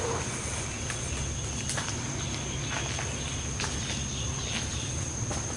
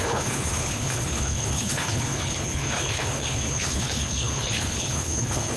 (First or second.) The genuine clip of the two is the first